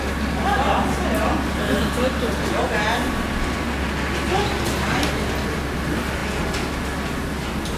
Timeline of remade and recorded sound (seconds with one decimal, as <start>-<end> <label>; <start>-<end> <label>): 0.0-7.8 recorded